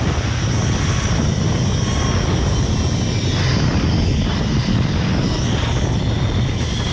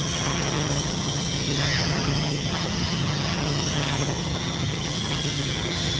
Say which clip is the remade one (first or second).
second